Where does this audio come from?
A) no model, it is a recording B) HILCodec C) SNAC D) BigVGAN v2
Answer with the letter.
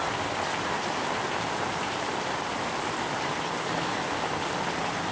D